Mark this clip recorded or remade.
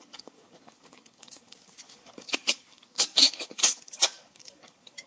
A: remade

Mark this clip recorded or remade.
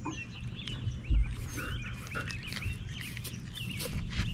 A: remade